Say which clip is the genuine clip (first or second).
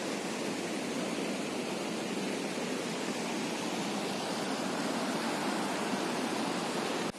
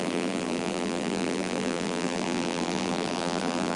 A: first